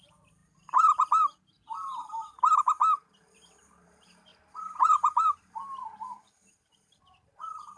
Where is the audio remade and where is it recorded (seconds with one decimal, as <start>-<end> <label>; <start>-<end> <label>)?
0.0-0.4 remade; 0.4-3.6 recorded; 3.6-7.8 remade